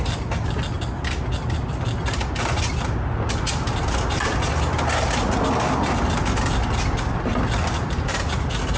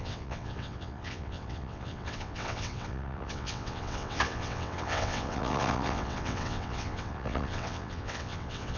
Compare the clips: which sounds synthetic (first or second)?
second